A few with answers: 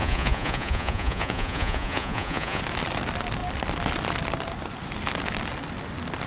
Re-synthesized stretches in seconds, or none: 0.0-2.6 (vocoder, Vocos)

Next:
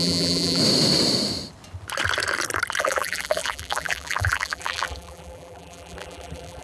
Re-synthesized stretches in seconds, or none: 0.0-0.6 (vocoder, BigVGAN v2); 2.8-6.6

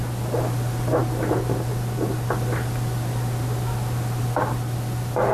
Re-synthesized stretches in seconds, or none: none